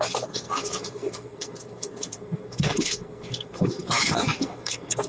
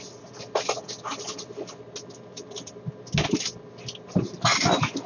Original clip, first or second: second